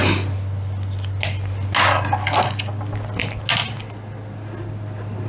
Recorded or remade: recorded